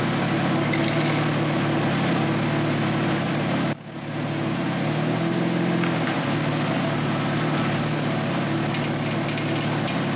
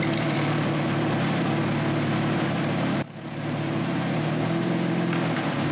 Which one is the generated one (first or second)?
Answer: second